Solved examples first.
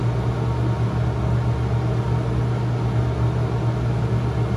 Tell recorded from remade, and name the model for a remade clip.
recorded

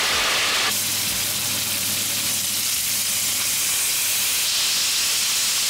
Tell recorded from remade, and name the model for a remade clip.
recorded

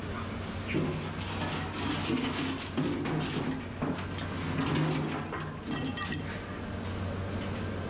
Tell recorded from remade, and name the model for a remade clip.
recorded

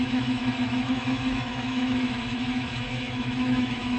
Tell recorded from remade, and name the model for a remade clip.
remade, autoencoder, DAC-VAE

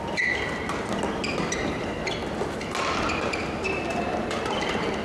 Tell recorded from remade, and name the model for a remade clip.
recorded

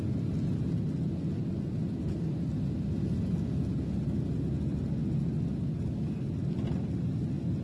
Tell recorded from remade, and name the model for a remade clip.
recorded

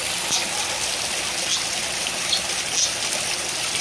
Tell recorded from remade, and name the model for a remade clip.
recorded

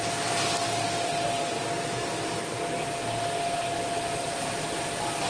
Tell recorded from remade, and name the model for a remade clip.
recorded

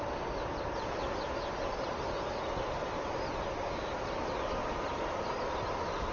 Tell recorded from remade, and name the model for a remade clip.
recorded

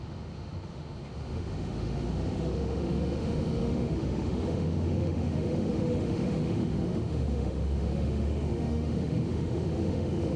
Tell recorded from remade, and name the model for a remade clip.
remade, autoencoder, DAC-VAE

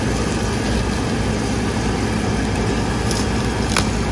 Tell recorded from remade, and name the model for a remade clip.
recorded